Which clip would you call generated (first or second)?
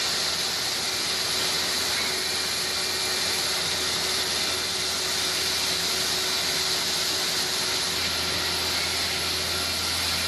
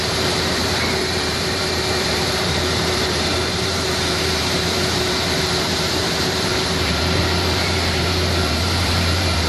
second